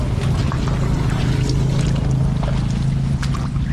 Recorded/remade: recorded